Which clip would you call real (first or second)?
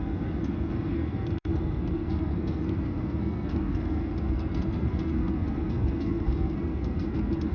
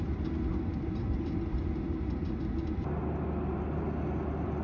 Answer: second